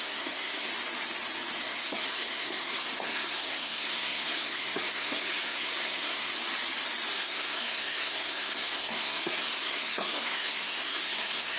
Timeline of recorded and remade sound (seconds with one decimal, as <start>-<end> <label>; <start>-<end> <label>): 0.0-0.7 remade; 0.7-1.6 recorded; 1.6-6.3 remade; 6.3-7.1 recorded; 7.1-11.6 remade